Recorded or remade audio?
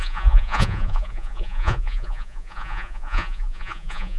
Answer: remade